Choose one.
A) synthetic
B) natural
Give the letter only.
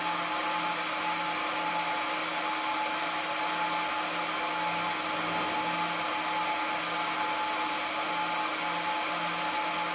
B